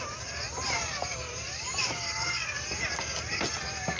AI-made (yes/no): no